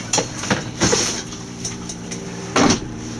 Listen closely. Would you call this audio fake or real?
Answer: fake